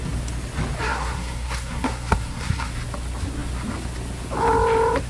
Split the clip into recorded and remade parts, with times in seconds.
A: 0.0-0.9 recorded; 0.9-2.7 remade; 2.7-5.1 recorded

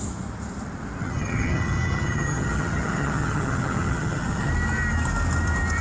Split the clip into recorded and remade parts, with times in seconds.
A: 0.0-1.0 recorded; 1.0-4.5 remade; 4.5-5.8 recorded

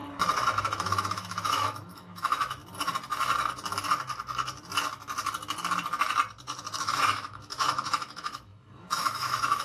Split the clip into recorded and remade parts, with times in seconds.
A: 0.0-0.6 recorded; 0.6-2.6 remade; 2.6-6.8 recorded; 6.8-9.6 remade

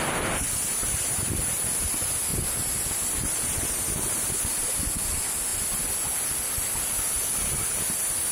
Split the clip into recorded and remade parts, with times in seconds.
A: 0.0-8.3 recorded

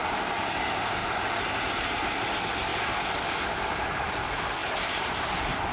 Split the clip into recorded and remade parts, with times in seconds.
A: 0.0-1.0 recorded; 1.0-2.3 remade; 2.3-4.6 recorded; 4.6-5.7 remade

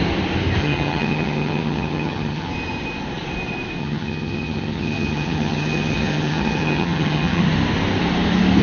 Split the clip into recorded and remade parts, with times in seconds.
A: 0.0-0.6 recorded; 0.6-2.5 remade; 2.5-3.8 recorded; 3.8-7.4 remade; 7.4-8.6 recorded

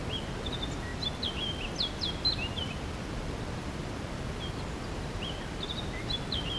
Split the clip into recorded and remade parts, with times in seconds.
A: 0.0-6.6 recorded

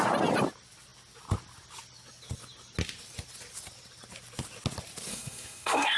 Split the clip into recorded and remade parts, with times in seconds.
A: 0.0-5.1 recorded; 5.1-6.0 remade